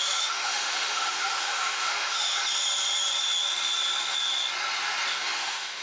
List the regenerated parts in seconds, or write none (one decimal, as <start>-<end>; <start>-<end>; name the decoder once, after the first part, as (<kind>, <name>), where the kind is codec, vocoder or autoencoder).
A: 0.0-2.4 (autoencoder, DAC-VAE); 5.1-5.8